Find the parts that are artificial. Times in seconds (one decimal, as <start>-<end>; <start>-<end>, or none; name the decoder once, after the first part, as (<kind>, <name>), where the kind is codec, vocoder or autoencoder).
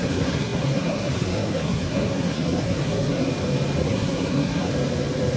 0.0-3.3 (codec, SNAC); 3.8-4.7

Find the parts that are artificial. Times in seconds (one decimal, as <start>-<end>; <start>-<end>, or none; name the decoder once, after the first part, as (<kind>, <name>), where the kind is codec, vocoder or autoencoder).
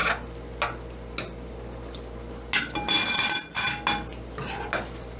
none